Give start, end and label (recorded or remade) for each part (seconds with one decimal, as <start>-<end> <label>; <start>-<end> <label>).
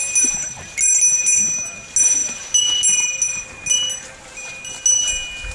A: 0.0-5.5 recorded